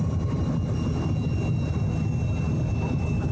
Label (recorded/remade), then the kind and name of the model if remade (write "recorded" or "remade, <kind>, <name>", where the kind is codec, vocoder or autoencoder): recorded